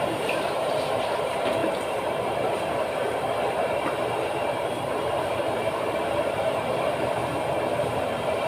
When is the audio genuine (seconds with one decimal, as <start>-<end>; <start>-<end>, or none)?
7.2-7.8

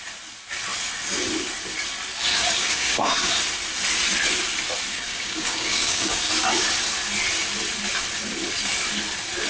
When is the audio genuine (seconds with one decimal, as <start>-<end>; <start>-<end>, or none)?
0.0-2.3; 3.3-4.9; 6.3-9.5

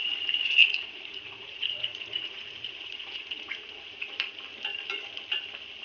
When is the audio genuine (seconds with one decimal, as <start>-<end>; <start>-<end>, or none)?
0.0-0.6; 4.1-5.8

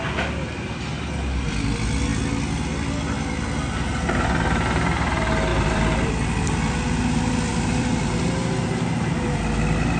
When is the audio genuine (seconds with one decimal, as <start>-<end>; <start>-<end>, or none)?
0.0-5.5; 6.1-7.5; 8.6-10.0

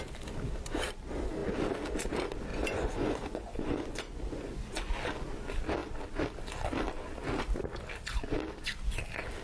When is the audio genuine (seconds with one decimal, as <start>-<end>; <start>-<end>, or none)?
0.0-2.5; 4.9-9.4